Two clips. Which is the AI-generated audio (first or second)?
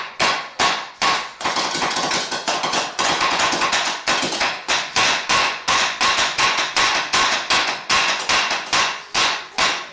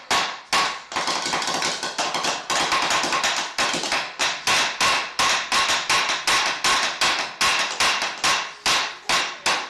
first